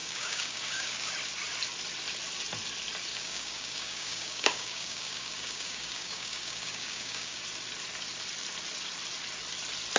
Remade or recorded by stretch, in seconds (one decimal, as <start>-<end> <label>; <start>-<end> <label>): 0.0-1.1 remade; 1.1-3.1 recorded; 3.1-7.4 remade; 7.4-10.0 recorded